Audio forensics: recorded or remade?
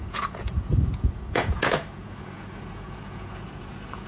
remade